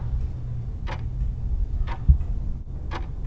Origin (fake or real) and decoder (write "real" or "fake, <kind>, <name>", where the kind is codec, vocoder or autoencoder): real